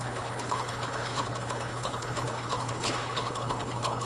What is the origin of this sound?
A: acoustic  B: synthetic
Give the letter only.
B